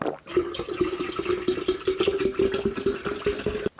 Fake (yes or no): no